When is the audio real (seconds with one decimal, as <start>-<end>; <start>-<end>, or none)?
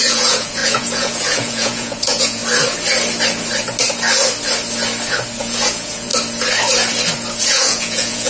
2.4-5.4; 6.1-7.4